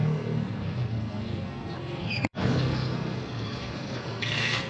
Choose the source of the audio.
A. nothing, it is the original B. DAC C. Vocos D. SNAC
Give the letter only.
D